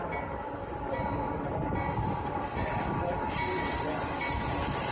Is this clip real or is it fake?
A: real